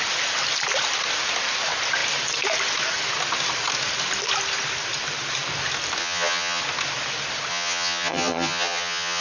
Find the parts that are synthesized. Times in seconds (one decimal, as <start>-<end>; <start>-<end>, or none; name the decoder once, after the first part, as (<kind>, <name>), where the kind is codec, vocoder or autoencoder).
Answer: 6.0-6.6 (vocoder, HiFi-GAN); 7.5-9.2